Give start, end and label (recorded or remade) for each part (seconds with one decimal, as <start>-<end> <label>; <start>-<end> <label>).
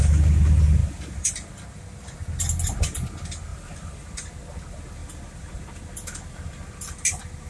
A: 0.0-0.8 recorded; 0.8-1.3 remade; 1.3-3.5 recorded; 3.5-4.1 remade; 4.1-5.0 recorded; 5.0-5.5 remade; 5.5-7.5 recorded